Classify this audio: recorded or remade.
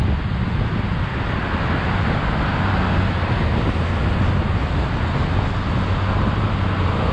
recorded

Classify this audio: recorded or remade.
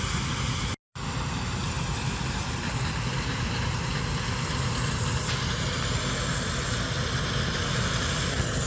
recorded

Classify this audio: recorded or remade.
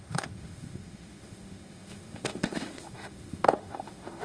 remade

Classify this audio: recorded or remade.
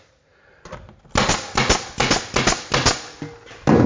recorded